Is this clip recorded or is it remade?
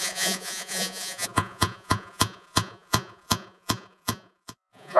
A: remade